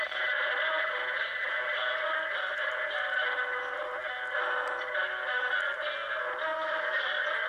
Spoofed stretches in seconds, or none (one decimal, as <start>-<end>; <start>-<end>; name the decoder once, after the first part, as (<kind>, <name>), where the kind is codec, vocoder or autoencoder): none